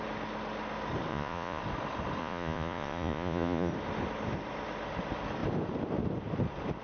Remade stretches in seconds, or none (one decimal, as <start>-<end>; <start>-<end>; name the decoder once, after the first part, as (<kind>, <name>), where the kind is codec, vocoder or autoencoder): 1.1-1.6 (vocoder, Vocos); 2.2-3.7